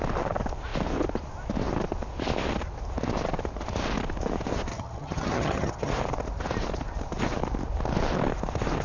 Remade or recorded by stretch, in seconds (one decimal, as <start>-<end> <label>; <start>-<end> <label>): 0.0-4.7 recorded; 4.7-5.9 remade; 5.9-8.8 recorded

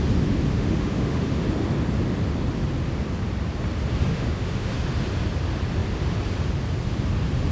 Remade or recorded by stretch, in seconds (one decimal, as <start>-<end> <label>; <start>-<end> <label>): 0.0-0.5 recorded; 0.5-1.4 remade; 1.4-4.1 recorded; 4.1-4.7 remade; 4.7-7.5 recorded